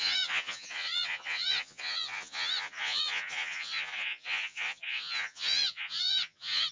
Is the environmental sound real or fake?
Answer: fake